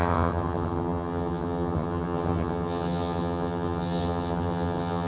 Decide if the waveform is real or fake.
fake